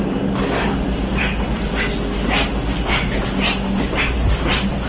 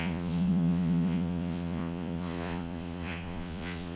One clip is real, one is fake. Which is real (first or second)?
first